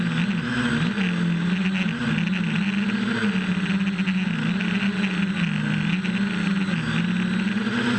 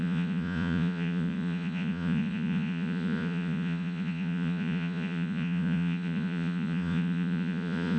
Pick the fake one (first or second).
second